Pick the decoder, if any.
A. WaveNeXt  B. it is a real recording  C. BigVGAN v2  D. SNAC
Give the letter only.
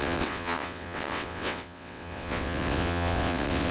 A